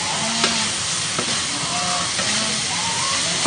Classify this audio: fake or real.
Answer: real